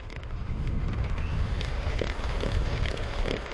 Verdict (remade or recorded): remade